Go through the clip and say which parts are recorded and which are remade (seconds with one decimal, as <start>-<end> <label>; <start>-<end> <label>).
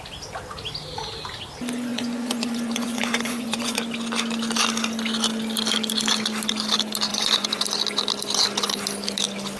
0.0-1.9 recorded; 1.9-3.8 remade; 3.8-7.1 recorded; 7.1-7.6 remade; 7.6-9.6 recorded